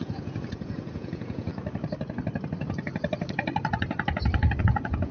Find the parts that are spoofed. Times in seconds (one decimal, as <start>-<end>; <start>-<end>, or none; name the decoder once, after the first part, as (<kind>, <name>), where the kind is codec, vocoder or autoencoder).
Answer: 0.0-1.5 (vocoder, Vocos); 4.6-5.1